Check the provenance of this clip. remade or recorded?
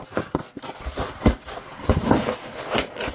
recorded